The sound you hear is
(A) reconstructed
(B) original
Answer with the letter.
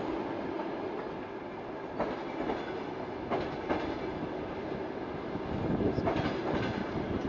B